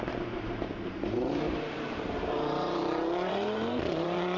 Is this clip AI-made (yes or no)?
yes